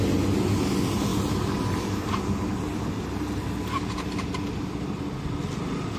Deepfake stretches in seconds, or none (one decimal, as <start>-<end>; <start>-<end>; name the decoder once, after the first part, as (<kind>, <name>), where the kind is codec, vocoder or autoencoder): none